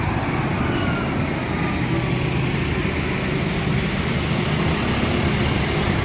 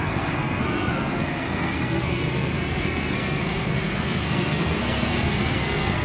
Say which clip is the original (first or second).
first